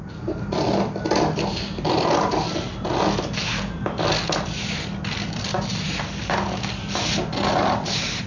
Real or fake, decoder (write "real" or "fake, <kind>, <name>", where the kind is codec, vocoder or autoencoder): real